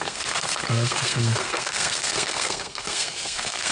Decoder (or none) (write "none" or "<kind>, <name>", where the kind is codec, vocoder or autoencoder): codec, SNAC